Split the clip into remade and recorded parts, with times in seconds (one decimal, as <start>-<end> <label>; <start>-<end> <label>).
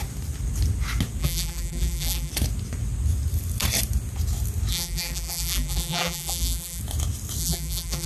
0.0-1.2 recorded; 1.2-2.3 remade; 2.3-4.7 recorded; 4.7-6.8 remade; 6.8-7.4 recorded; 7.4-8.1 remade